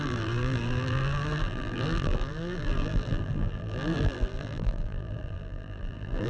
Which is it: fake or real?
fake